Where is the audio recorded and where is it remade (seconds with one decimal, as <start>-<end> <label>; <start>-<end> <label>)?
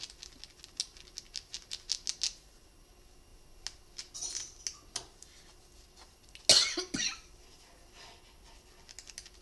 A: 0.0-9.4 recorded